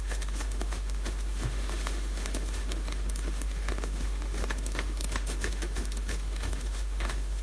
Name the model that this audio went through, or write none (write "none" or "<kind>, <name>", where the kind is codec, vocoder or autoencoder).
autoencoder, DAC-VAE